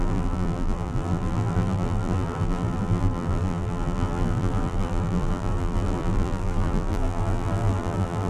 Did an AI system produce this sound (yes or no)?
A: yes